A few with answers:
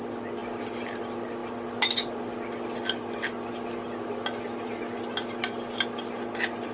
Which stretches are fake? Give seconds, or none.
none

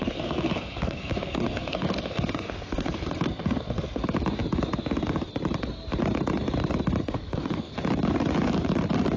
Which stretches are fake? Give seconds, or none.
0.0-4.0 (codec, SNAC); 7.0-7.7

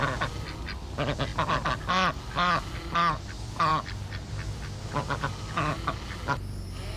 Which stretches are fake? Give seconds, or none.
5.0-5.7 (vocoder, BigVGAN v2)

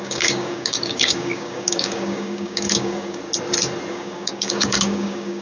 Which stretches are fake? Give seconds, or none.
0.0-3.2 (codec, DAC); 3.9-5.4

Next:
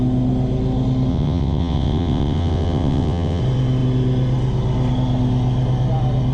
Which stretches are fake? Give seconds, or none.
1.1-3.4 (vocoder, WaveNeXt)